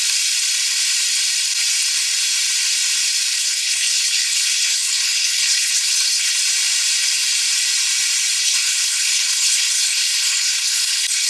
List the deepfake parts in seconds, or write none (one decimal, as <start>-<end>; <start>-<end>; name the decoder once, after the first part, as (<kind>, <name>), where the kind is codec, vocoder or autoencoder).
3.4-6.4 (codec, HILCodec); 8.4-11.3

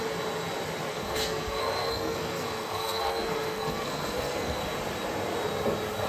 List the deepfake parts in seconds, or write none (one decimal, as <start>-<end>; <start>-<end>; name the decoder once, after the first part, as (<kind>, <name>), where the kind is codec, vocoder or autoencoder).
0.9-4.6 (codec, SNAC)

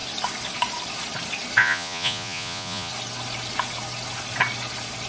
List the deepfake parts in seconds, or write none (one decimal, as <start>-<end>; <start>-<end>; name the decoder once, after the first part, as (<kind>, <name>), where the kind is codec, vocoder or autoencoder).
1.6-2.9 (vocoder, Vocos)

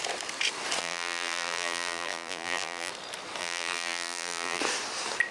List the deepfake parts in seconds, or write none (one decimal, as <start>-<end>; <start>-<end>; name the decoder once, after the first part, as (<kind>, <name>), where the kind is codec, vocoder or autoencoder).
0.8-2.9 (vocoder, BigVGAN v2); 3.4-4.6

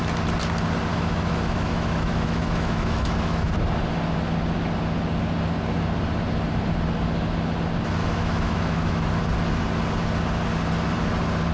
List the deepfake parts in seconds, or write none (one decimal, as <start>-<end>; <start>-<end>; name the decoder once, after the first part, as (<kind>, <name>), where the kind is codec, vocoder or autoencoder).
0.9-3.5 (autoencoder, DAC-VAE); 8.0-9.0

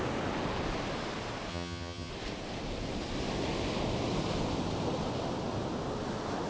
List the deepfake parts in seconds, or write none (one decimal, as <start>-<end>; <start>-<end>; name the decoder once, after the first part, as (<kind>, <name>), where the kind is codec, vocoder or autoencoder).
1.5-2.1 (vocoder, HiFi-GAN)

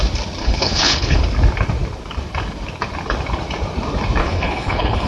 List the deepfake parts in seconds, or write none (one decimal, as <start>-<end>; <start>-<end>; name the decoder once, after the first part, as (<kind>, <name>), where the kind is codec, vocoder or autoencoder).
0.4-1.2 (codec, HILCodec); 4.2-5.1